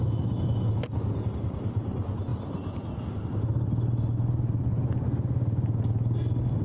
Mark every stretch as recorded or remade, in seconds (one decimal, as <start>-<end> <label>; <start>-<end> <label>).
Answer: 0.0-6.6 recorded